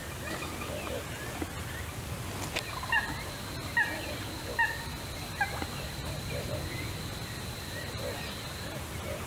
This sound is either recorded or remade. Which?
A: recorded